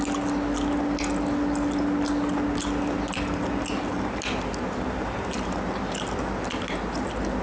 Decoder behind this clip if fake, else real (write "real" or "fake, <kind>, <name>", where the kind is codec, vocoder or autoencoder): real